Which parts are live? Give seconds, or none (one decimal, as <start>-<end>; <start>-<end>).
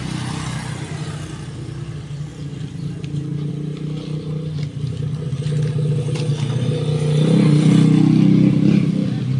0.0-9.4